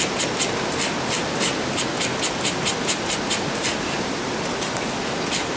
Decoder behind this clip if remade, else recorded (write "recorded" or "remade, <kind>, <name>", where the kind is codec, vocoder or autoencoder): recorded